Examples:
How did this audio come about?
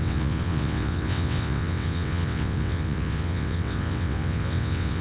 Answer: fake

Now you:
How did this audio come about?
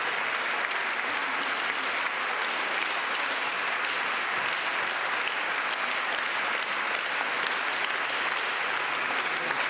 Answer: real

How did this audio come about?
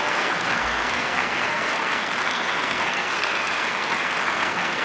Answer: fake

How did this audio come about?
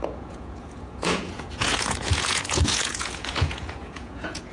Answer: fake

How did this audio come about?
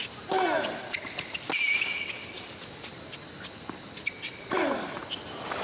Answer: real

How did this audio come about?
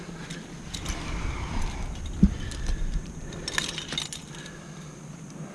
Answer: fake